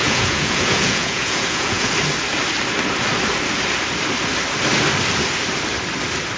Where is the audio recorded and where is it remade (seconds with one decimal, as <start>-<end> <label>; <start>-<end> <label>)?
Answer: 0.0-1.9 remade; 1.9-6.4 recorded

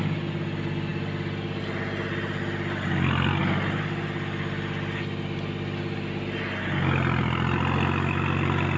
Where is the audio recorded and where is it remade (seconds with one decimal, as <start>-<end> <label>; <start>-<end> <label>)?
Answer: 0.0-8.8 recorded

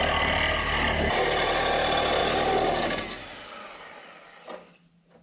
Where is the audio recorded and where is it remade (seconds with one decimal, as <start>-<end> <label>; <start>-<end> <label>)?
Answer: 0.0-5.2 recorded

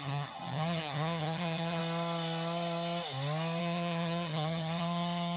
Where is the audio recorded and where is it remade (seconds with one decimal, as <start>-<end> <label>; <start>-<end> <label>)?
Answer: 0.0-1.8 remade; 1.8-3.6 recorded; 3.6-5.4 remade

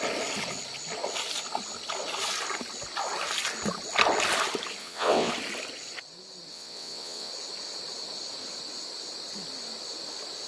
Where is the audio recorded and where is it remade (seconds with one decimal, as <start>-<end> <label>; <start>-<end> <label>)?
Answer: 0.0-4.8 recorded; 4.8-5.3 remade; 5.3-6.5 recorded; 6.5-7.3 remade; 7.3-10.5 recorded

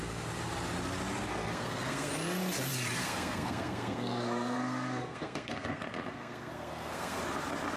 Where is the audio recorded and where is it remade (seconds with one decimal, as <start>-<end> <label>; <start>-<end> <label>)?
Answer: 0.0-1.3 recorded; 1.3-2.1 remade; 2.1-3.0 recorded; 3.0-7.2 remade; 7.2-7.8 recorded

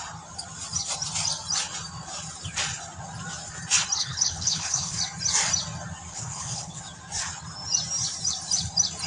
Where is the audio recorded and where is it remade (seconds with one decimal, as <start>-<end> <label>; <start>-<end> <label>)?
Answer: 0.0-4.0 recorded; 4.0-5.0 remade; 5.0-6.1 recorded; 6.1-6.8 remade; 6.8-9.1 recorded

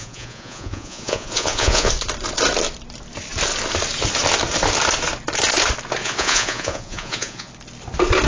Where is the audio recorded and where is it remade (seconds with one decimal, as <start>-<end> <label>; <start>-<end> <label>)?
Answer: 0.0-1.9 remade; 1.9-6.0 recorded; 6.0-7.5 remade; 7.5-8.3 recorded